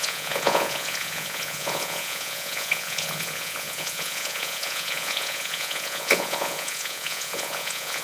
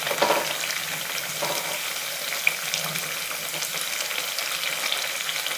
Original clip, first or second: second